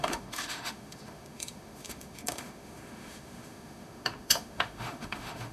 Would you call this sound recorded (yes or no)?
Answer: no